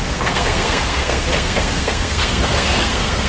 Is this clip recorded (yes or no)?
no